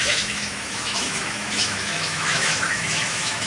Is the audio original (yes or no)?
no